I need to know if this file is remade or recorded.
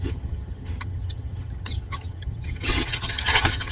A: remade